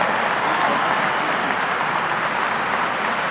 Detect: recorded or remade recorded